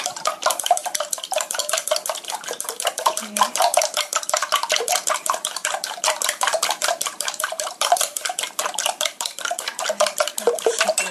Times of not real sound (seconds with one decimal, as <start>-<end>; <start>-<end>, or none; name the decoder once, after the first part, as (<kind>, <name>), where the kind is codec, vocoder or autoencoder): 0.0-1.6 (vocoder, BigVGAN v2); 2.9-11.1